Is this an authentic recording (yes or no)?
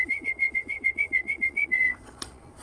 no